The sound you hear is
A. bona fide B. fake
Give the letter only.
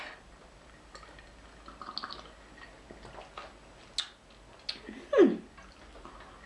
A